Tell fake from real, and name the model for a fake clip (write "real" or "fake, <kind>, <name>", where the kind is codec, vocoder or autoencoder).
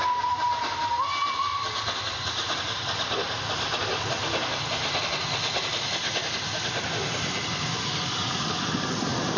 real